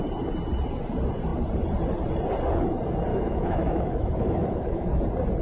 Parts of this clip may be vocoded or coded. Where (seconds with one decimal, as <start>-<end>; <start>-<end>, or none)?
3.1-5.0